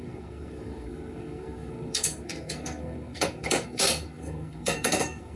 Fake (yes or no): yes